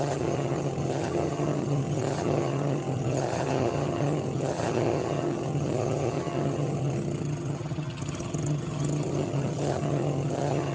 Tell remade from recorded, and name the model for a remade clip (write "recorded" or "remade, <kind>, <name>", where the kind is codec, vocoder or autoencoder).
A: remade, vocoder, HiFi-GAN